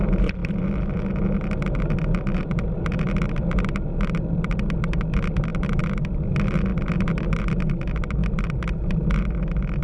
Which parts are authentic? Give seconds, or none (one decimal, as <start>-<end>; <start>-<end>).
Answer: 0.0-9.8